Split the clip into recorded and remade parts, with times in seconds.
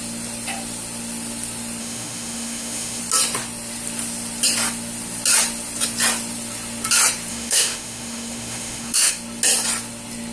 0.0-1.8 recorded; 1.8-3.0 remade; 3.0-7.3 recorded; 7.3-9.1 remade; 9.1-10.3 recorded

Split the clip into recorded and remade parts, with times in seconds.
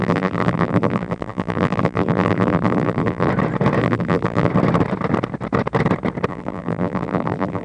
0.0-3.3 remade; 3.3-3.8 recorded; 3.8-4.5 remade; 4.5-6.3 recorded; 6.3-7.6 remade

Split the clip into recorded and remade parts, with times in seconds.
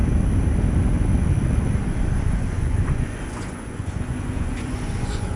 0.0-0.6 recorded; 0.6-1.1 remade; 1.1-2.2 recorded; 2.2-5.4 remade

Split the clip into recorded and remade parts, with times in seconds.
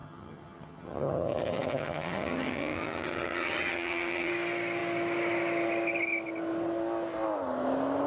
0.0-4.3 remade; 4.3-8.1 recorded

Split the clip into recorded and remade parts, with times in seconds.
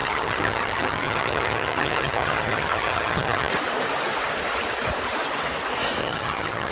0.0-3.5 remade; 3.5-6.0 recorded; 6.0-6.7 remade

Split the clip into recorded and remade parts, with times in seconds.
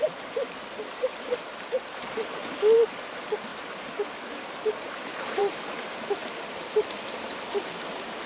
0.0-6.2 recorded; 6.2-7.5 remade; 7.5-8.3 recorded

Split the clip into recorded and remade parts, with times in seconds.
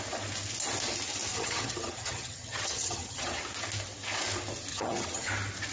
0.0-1.3 recorded; 1.3-3.4 remade; 3.4-4.7 recorded; 4.7-5.3 remade; 5.3-5.7 recorded